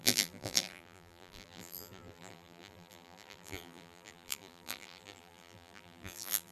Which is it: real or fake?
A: fake